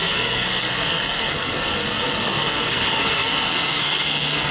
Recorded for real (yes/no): no